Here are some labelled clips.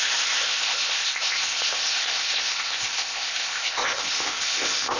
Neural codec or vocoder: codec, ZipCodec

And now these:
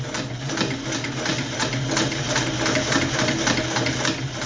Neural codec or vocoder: none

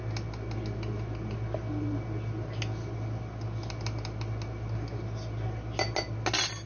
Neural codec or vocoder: none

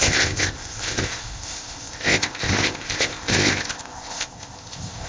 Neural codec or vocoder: codec, ZipCodec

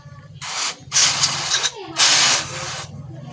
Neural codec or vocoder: none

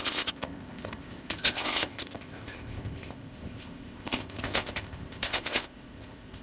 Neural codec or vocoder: codec, ZipCodec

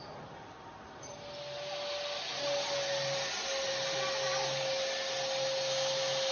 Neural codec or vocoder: none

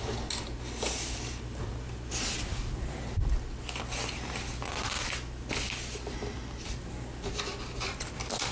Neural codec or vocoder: none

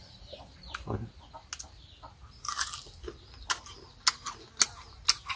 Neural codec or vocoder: none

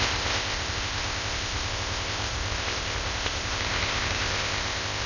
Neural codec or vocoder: codec, ZipCodec